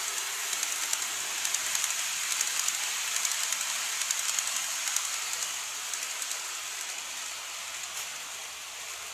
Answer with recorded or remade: recorded